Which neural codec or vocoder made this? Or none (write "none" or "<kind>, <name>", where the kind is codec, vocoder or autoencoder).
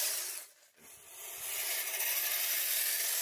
none